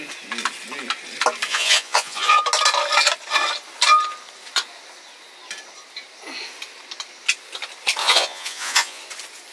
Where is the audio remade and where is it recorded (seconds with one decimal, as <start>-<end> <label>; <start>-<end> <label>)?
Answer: 0.0-1.5 recorded; 1.5-2.4 remade; 2.4-8.0 recorded; 8.0-9.0 remade; 9.0-9.5 recorded